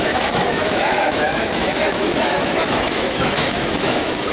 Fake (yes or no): yes